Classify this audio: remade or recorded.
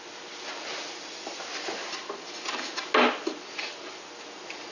recorded